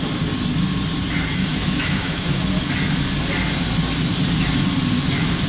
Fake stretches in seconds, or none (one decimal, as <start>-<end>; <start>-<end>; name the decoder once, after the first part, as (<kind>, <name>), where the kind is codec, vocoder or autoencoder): 1.5-2.4 (autoencoder, DAC-VAE)